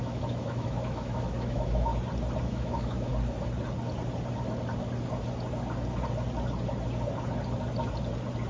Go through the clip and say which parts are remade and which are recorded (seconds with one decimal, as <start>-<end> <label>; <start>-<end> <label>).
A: 0.0-1.9 remade; 1.9-2.4 recorded; 2.4-3.1 remade; 3.1-8.5 recorded